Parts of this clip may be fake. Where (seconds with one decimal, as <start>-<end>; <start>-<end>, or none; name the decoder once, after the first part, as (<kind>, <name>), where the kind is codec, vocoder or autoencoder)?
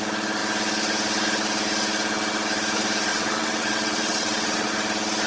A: 3.1-4.7 (vocoder, WaveNeXt)